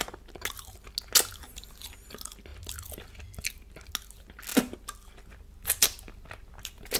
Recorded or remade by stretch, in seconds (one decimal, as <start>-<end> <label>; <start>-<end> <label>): 0.0-7.0 recorded

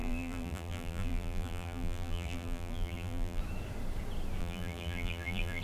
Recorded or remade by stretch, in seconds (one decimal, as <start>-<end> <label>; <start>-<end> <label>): 0.0-3.4 remade; 3.4-4.4 recorded; 4.4-5.6 remade

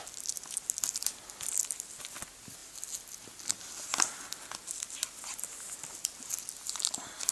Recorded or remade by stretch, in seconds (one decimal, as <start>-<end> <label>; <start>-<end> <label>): 0.0-7.3 recorded

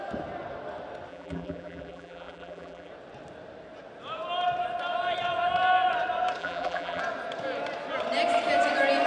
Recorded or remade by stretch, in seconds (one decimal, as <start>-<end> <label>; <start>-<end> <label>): 0.0-1.1 recorded; 1.1-2.9 remade; 2.9-6.4 recorded; 6.4-7.0 remade; 7.0-9.1 recorded

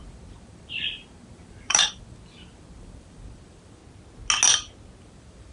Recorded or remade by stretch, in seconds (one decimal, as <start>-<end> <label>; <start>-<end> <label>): 0.0-3.8 remade; 3.8-5.0 recorded; 5.0-5.5 remade